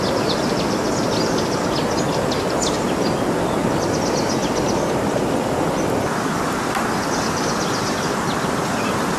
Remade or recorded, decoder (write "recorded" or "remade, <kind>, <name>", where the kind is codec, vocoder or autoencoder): recorded